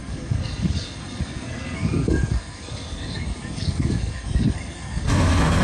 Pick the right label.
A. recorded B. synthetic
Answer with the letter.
B